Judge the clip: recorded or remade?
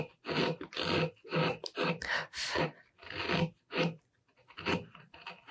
recorded